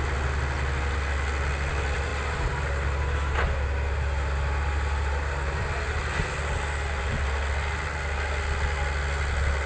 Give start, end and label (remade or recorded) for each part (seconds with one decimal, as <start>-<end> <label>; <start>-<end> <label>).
0.0-9.7 recorded